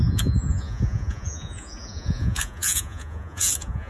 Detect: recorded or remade remade